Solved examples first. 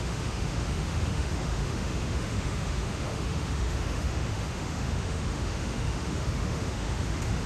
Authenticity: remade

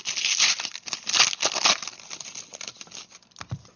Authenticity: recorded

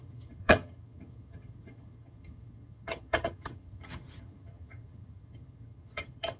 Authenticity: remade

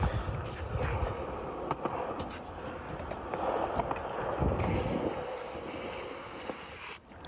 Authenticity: recorded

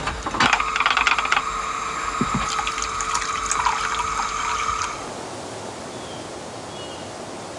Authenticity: recorded